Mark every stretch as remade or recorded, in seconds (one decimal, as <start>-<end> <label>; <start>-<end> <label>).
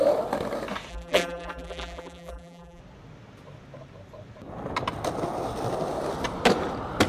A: 0.0-0.9 recorded; 0.9-2.8 remade; 2.8-7.1 recorded